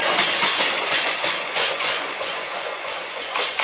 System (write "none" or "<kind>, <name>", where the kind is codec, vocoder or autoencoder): vocoder, Vocos